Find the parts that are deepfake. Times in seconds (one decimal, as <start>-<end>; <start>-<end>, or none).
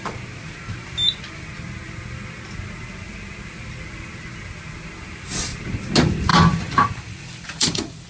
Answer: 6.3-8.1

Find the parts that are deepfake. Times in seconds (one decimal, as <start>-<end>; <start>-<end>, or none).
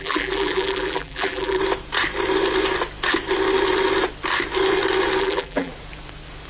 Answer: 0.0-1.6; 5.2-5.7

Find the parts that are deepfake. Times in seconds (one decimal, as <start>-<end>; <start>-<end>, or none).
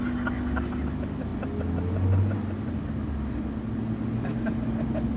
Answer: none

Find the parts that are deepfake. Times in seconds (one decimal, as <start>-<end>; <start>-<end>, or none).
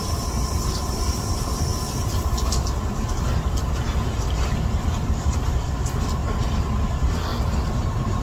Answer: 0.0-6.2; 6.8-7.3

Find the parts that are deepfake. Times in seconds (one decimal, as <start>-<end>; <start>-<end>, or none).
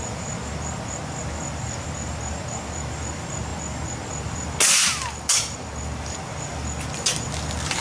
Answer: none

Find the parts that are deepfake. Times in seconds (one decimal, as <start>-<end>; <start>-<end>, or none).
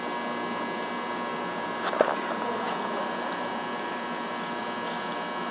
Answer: 1.3-4.6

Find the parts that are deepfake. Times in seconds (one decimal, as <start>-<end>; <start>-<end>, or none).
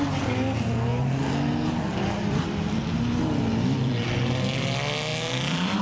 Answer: 0.9-2.8; 5.1-5.8